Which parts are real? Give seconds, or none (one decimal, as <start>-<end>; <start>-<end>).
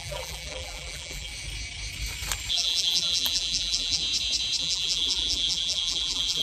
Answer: 1.3-2.5; 4.0-4.6